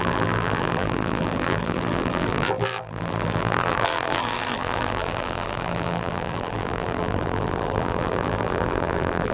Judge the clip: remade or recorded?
remade